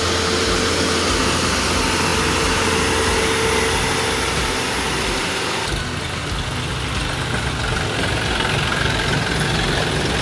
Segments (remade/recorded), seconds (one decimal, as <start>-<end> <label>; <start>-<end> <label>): 0.0-10.2 recorded